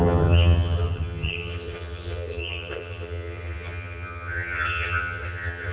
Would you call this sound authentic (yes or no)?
no